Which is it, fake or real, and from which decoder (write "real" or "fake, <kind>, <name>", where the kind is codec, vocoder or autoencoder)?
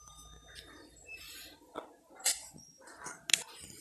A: real